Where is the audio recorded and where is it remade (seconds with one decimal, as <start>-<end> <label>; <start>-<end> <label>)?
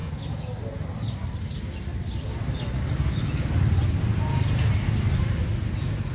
0.0-6.1 recorded